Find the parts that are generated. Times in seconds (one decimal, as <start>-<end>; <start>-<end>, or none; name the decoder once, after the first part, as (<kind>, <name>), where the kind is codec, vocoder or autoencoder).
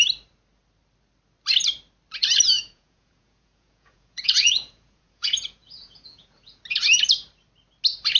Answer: 2.5-6.6 (vocoder, Vocos)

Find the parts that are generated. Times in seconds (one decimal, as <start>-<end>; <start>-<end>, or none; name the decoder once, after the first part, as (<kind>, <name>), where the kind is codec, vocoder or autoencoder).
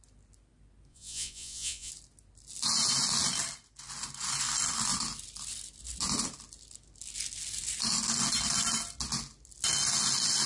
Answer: 0.9-1.9 (vocoder, Vocos)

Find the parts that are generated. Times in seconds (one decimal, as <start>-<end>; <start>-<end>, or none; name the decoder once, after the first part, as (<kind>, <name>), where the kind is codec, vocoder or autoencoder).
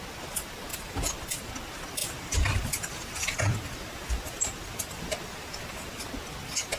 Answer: 0.7-1.5 (vocoder, BigVGAN v2); 2.0-6.1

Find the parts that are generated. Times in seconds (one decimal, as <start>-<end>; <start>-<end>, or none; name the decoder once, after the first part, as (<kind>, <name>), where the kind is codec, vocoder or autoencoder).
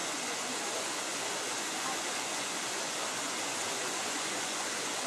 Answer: 0.0-5.1 (vocoder, Vocos)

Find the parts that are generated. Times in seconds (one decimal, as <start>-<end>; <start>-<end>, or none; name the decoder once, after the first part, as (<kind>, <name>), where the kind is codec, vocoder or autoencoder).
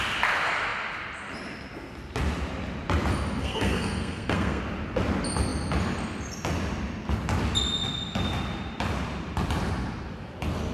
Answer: 3.4-4.6 (codec, SNAC)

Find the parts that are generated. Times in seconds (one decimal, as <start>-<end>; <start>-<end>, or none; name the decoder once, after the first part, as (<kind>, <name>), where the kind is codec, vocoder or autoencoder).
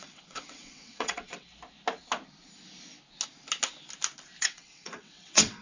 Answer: 0.0-1.5 (vocoder, WaveNeXt); 4.4-5.6